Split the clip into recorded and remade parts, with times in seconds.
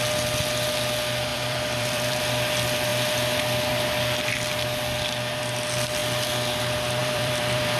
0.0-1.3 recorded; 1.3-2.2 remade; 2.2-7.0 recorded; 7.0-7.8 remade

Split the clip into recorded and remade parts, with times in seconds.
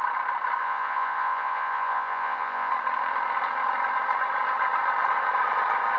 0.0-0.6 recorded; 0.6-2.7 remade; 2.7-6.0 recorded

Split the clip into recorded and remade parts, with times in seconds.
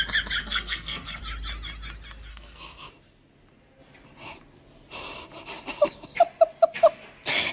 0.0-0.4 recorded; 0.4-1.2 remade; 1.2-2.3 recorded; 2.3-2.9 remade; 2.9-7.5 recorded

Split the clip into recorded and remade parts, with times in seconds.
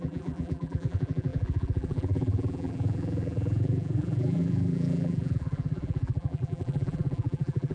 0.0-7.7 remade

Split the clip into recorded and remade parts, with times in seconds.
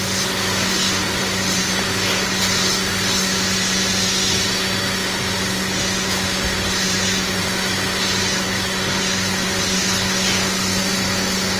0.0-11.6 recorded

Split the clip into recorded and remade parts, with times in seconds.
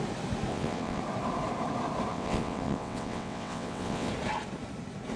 0.0-0.5 recorded; 0.5-1.0 remade; 1.0-2.1 recorded; 2.1-4.1 remade; 4.1-5.2 recorded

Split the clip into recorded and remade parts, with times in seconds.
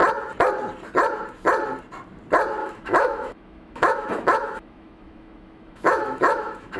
0.0-2.6 recorded; 2.6-6.8 remade